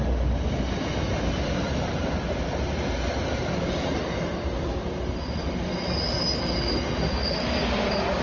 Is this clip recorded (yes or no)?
yes